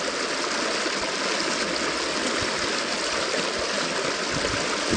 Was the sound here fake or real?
real